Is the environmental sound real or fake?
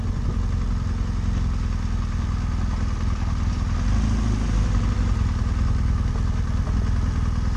real